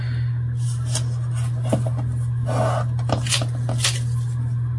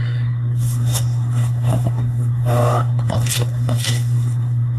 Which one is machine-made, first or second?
second